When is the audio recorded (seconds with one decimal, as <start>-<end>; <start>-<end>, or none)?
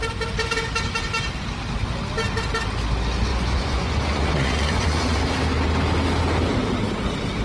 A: 0.0-3.3; 5.2-7.4